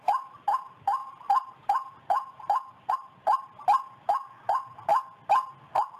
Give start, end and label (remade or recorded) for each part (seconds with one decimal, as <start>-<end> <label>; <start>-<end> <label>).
0.0-1.0 recorded; 1.0-2.9 remade; 2.9-6.0 recorded